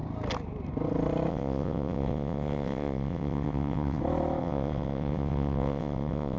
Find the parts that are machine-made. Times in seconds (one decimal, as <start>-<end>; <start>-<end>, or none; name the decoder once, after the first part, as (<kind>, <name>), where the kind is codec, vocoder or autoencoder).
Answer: 1.3-4.0 (vocoder, WaveNeXt); 4.4-6.4